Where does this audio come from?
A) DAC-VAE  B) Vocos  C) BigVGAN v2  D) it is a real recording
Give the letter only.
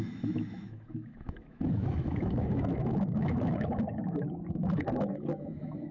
A